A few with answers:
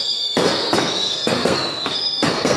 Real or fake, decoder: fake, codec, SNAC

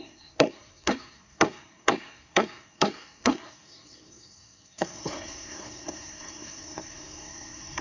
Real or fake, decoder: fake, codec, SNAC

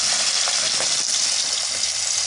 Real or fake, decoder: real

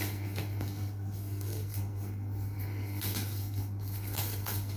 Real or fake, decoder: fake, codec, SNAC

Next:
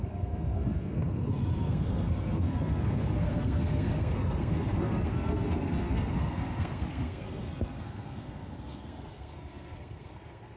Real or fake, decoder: fake, codec, SNAC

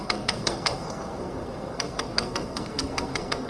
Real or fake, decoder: fake, codec, SNAC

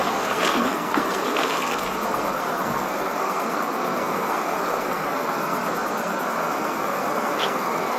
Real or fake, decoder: fake, codec, SNAC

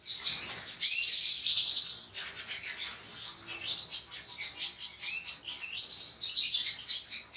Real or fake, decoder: real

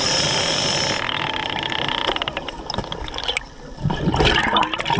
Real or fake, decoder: real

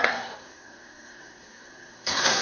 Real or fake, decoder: fake, codec, SNAC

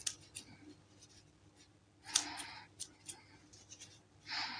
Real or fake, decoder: real